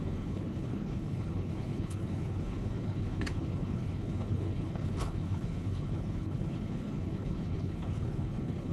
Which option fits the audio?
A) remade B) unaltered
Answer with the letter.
A